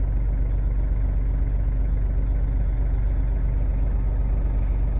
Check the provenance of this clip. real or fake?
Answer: real